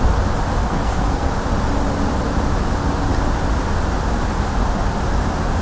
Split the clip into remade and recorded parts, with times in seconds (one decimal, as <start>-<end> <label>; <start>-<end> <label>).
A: 0.0-0.6 recorded; 0.6-1.3 remade; 1.3-5.6 recorded